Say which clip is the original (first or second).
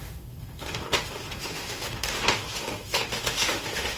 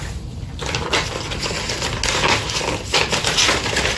second